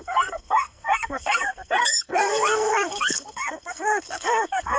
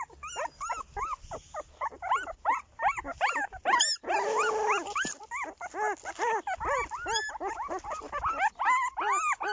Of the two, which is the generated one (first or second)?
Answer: first